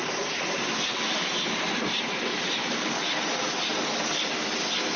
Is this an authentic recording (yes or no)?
yes